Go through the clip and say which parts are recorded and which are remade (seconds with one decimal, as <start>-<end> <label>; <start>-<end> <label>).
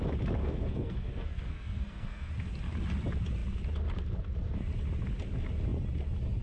0.0-0.4 recorded; 0.4-2.3 remade; 2.3-6.4 recorded